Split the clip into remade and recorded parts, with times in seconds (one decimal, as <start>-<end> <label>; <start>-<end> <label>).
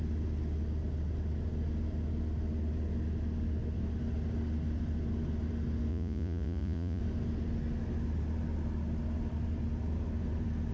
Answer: 0.0-5.9 recorded; 5.9-7.0 remade; 7.0-10.7 recorded